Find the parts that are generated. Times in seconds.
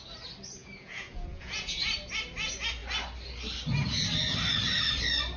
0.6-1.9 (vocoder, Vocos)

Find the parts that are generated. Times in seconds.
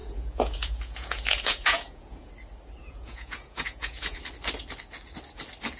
0.0-2.3 (vocoder, Vocos); 2.8-4.2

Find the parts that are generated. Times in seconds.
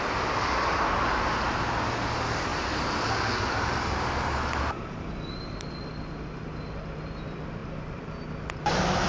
2.5-5.7 (vocoder, BigVGAN v2)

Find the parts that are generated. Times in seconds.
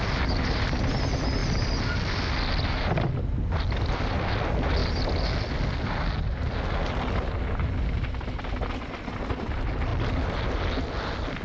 none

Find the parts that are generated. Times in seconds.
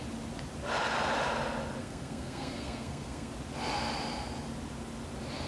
1.8-3.3 (codec, SNAC)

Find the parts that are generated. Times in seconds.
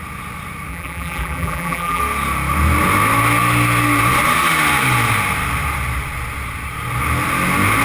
0.7-2.0 (vocoder, BigVGAN v2)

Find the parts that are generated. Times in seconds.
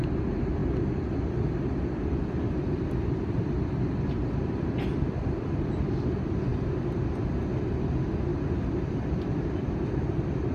0.6-5.7 (vocoder, BigVGAN v2); 8.3-9.7